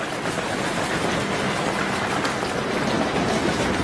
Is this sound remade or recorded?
recorded